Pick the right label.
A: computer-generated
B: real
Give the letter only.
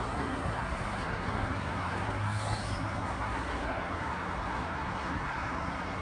A